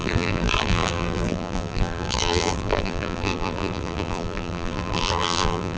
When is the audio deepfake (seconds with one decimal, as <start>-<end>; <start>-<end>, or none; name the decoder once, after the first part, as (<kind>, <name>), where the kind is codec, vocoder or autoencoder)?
0.0-5.8 (vocoder, BigVGAN v2)